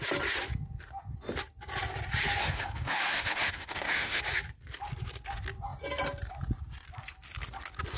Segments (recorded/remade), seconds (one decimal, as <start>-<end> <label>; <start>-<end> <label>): 0.0-2.4 recorded; 2.4-4.2 remade; 4.2-8.0 recorded